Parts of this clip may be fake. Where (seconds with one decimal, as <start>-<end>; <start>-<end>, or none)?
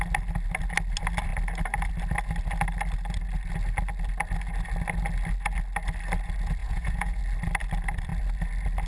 6.6-7.2